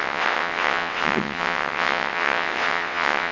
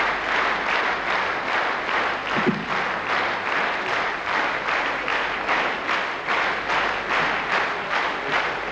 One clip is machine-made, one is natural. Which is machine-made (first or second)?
first